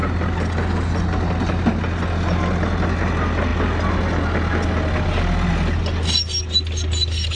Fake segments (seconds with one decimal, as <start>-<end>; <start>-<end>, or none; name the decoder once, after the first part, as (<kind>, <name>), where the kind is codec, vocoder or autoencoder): none